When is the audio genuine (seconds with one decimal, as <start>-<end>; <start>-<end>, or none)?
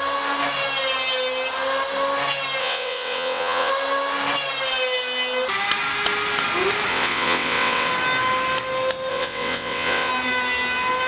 0.0-2.6; 3.7-6.9; 7.9-9.1; 10.1-11.1